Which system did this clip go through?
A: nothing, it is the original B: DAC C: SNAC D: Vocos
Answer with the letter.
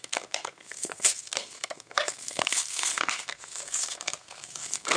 C